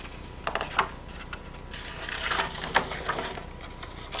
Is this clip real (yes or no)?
yes